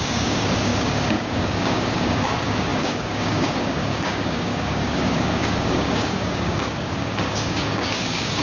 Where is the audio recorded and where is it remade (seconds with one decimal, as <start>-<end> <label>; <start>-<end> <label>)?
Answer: 0.0-8.4 remade